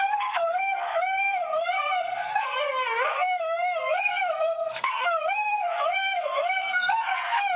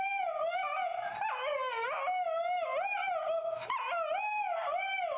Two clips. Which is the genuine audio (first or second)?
second